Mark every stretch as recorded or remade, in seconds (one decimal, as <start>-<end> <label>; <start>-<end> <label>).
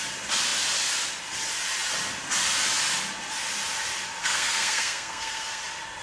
0.0-4.2 recorded; 4.2-5.6 remade; 5.6-6.0 recorded